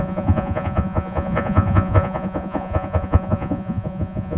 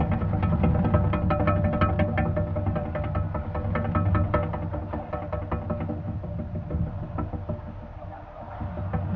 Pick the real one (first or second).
second